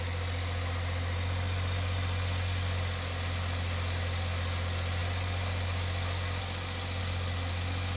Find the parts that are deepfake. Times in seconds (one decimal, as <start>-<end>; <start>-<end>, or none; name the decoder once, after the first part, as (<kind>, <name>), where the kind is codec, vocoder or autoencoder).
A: none